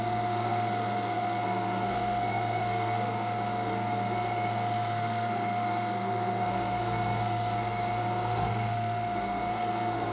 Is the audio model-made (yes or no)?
yes